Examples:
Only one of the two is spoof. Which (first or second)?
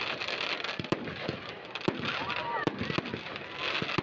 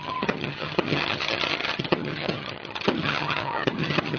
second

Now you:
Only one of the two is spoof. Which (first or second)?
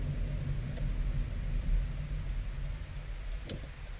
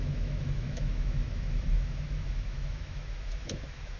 second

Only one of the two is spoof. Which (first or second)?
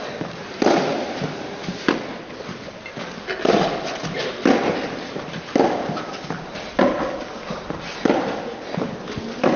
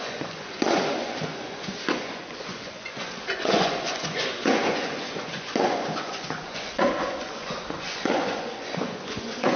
second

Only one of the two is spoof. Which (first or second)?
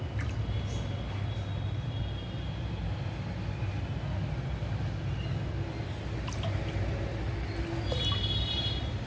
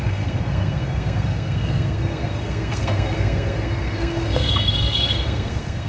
second